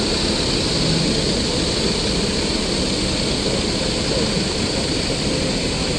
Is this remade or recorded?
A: recorded